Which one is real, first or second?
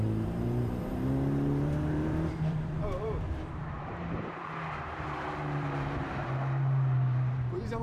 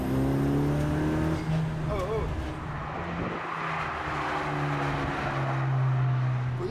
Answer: second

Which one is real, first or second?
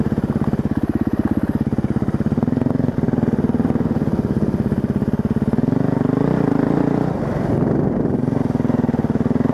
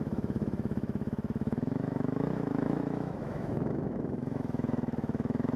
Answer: first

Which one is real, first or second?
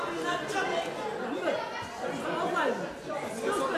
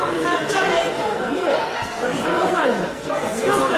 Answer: first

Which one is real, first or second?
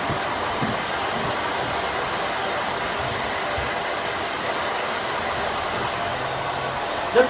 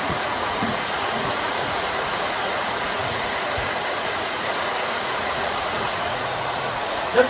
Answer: first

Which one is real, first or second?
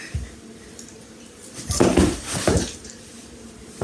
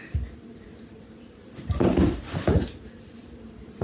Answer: first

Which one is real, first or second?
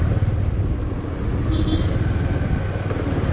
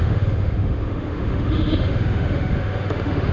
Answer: first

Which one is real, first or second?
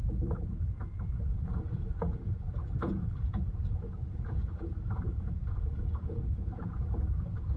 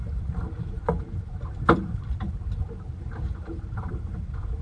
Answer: second